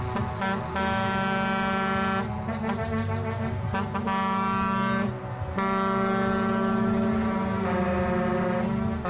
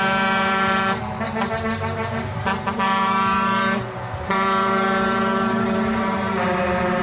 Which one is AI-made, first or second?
second